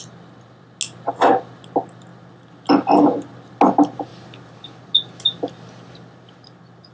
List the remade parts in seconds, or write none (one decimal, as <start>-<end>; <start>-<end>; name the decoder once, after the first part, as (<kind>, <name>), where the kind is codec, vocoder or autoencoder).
none